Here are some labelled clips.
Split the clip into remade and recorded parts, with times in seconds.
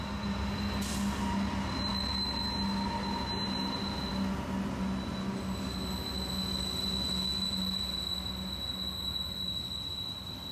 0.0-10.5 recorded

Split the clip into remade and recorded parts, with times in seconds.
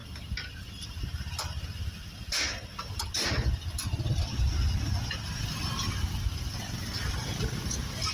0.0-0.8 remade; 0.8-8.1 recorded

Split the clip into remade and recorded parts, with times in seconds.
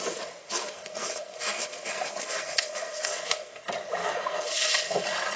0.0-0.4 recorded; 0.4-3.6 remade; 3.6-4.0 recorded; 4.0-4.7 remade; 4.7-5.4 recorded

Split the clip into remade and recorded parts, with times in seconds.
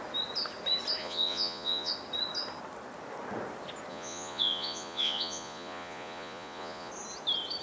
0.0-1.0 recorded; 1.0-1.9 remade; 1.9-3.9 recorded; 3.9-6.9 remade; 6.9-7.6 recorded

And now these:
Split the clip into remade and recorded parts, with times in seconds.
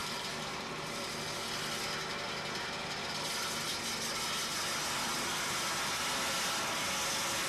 0.0-1.1 remade; 1.1-7.5 recorded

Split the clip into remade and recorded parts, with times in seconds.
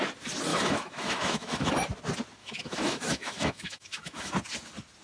0.0-0.5 recorded; 0.5-1.7 remade; 1.7-2.4 recorded; 2.4-4.3 remade; 4.3-5.0 recorded